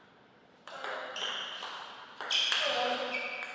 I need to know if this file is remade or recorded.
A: recorded